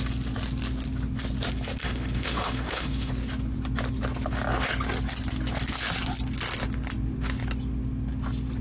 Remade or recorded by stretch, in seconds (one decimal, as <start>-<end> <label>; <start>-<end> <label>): 0.0-1.8 recorded; 1.8-3.1 remade; 3.1-8.6 recorded